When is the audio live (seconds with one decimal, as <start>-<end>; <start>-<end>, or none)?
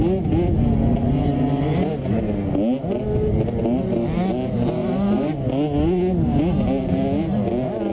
0.0-4.8; 5.5-7.9